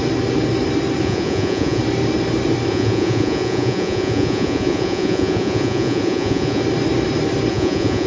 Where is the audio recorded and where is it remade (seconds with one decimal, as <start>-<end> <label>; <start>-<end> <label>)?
0.0-1.0 recorded; 1.0-1.8 remade; 1.8-2.7 recorded; 2.7-6.6 remade; 6.6-7.5 recorded; 7.5-8.1 remade